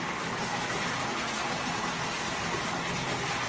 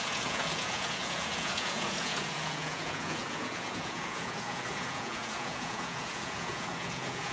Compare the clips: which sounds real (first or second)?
first